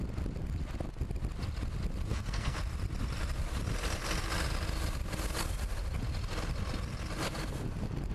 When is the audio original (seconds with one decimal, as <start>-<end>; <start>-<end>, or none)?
0.0-2.1; 2.6-8.1